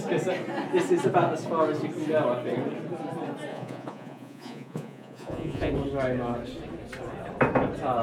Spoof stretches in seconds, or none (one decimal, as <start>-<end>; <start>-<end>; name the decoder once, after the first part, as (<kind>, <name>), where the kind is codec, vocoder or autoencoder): 3.5-5.7 (vocoder, Vocos)